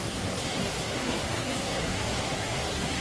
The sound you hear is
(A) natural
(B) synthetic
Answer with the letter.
B